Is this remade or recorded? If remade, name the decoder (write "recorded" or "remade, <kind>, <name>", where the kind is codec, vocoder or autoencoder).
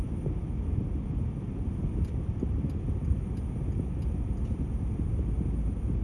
recorded